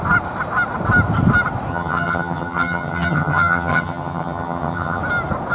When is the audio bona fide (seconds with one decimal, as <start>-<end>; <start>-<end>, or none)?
0.0-1.7; 5.0-5.5